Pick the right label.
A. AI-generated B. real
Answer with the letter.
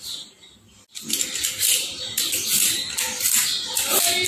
B